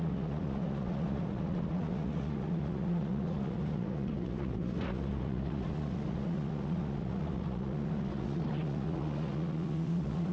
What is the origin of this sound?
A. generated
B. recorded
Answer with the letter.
A